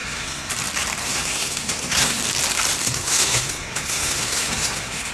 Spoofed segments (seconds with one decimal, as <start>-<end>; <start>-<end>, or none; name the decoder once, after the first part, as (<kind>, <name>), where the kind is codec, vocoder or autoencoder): 0.0-0.5 (codec, SNAC); 1.0-2.2; 2.8-5.1

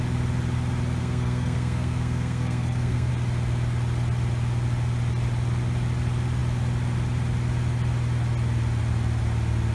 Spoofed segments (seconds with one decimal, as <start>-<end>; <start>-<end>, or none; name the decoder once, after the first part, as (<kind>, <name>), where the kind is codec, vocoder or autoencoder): 1.0-3.1 (codec, SNAC)

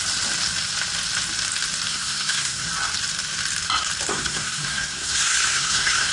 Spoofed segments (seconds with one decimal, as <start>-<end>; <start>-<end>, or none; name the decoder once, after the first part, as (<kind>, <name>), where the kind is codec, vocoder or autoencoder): 1.9-2.7 (codec, SNAC); 4.1-6.1

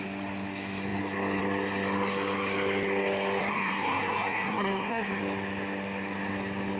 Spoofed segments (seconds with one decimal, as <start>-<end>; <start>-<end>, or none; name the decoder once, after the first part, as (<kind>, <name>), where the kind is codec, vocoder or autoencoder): 3.4-5.2 (codec, SNAC)